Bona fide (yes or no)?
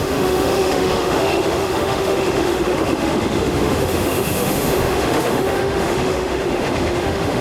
no